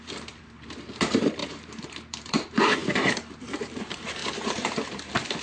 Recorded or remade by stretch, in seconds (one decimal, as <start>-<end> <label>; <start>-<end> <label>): 0.0-5.4 remade